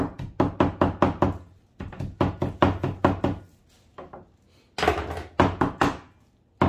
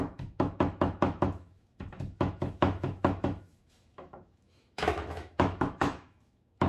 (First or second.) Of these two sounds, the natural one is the first